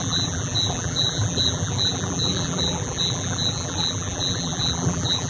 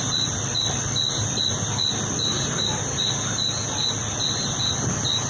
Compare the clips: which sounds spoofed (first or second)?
first